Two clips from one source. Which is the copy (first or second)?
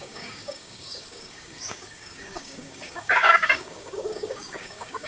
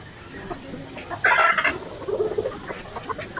first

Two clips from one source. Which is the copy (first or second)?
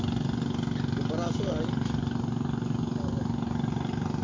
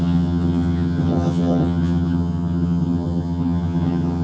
second